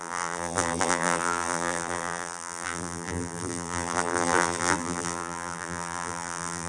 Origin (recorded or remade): remade